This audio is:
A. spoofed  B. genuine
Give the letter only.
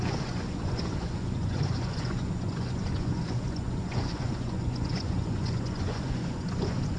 A